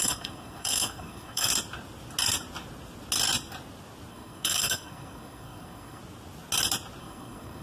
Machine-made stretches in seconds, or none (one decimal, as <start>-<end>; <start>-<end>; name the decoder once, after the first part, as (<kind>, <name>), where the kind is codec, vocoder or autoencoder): 0.0-1.5 (codec, SNAC); 4.1-6.0; 7.0-7.6